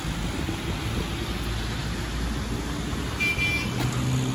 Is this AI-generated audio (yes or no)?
no